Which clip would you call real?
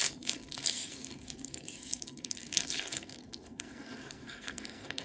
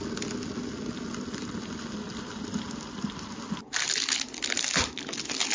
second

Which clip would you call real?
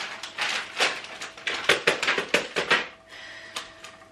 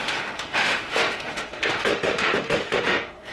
first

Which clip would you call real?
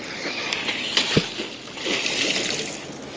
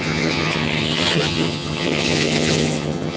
first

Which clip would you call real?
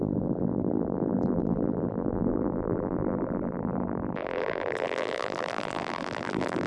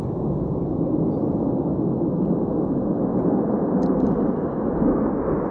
second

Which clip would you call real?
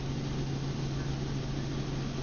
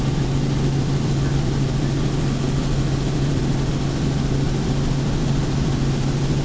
first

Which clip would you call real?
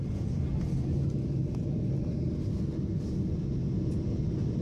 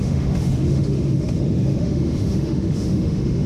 first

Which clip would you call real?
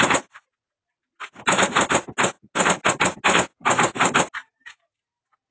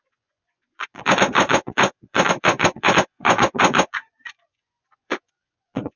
first